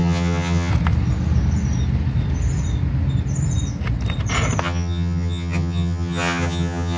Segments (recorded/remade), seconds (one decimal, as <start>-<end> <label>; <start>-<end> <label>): 0.0-0.7 remade; 0.7-4.6 recorded; 4.6-7.0 remade